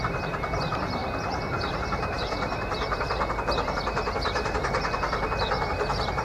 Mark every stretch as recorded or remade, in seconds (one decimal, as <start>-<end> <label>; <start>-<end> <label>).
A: 0.0-6.2 remade